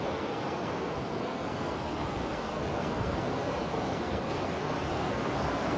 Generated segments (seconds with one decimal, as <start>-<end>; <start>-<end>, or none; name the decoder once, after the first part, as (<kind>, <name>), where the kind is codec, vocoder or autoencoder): 0.0-5.8 (codec, SNAC)